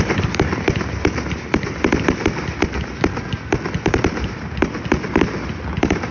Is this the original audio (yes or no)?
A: yes